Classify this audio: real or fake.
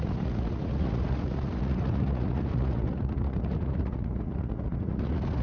fake